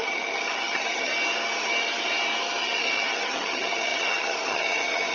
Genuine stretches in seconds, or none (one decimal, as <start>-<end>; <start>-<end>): 1.1-2.6